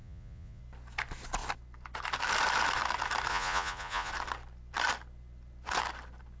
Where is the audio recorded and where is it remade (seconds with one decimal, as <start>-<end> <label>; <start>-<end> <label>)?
0.0-0.6 remade; 0.6-3.3 recorded; 3.3-4.1 remade; 4.1-6.4 recorded